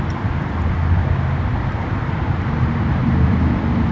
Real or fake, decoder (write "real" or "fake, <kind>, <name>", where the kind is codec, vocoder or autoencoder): fake, vocoder, BigVGAN v2